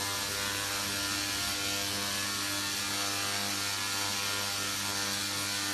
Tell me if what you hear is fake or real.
real